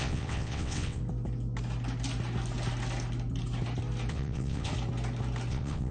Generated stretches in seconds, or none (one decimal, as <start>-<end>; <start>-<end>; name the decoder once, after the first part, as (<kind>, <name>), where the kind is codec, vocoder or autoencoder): 0.0-1.0 (vocoder, WaveNeXt); 4.1-4.7; 5.5-5.9